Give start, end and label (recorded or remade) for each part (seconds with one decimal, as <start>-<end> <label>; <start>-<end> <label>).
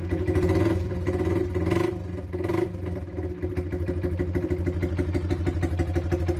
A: 0.0-1.4 remade; 1.4-6.4 recorded